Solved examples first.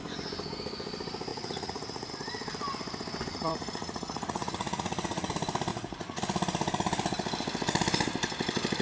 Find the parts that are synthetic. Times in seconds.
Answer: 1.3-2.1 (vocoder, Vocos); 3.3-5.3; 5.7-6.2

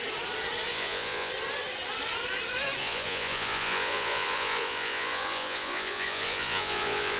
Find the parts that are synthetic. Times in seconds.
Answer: 0.7-1.3 (vocoder, Vocos); 2.8-7.2

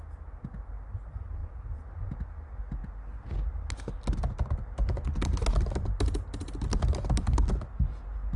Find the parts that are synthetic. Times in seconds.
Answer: none

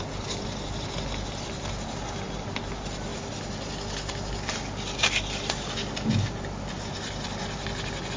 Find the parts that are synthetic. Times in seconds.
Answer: none

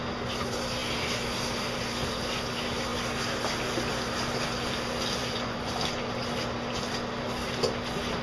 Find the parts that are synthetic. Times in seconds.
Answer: 5.2-5.7 (vocoder, Vocos)

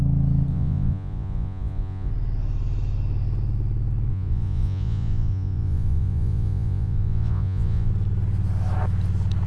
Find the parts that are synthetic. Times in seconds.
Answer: 0.5-2.1 (vocoder, Vocos); 4.1-7.9